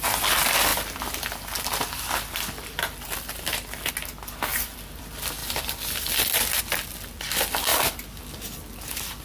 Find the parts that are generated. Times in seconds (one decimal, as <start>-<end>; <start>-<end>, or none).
0.7-3.9; 4.5-5.0; 5.4-6.6